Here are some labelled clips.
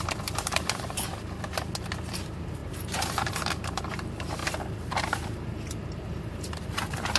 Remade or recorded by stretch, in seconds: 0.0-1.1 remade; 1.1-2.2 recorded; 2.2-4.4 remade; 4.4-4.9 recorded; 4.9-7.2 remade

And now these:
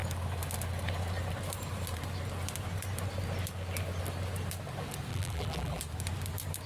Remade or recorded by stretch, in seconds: 0.0-5.1 recorded; 5.1-5.8 remade; 5.8-6.7 recorded

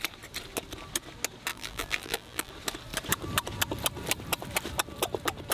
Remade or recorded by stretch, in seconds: 0.0-1.5 recorded; 1.5-2.5 remade; 2.5-5.5 recorded